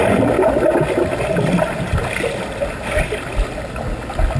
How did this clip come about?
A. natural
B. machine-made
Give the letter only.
A